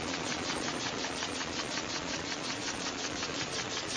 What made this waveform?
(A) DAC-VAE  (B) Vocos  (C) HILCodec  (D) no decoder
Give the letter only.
B